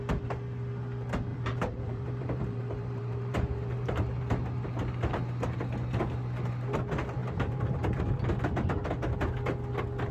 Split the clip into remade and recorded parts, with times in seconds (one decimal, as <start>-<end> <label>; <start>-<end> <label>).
0.0-1.3 recorded; 1.3-4.3 remade; 4.3-7.2 recorded; 7.2-8.0 remade; 8.0-10.1 recorded